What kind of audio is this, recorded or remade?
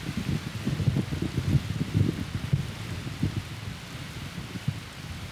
recorded